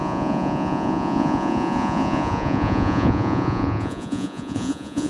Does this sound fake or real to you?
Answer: fake